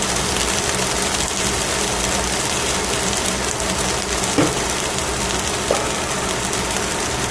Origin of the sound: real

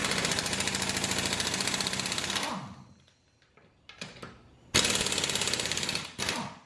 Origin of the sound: real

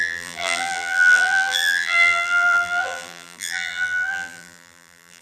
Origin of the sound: fake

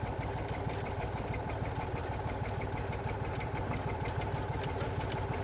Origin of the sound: fake